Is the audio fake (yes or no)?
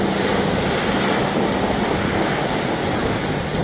no